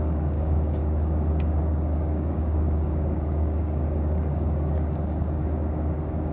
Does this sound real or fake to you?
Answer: fake